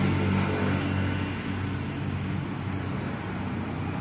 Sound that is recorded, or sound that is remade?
recorded